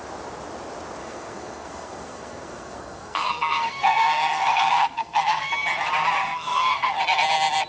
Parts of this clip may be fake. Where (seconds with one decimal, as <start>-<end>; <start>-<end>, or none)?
1.0-5.5; 6.2-6.9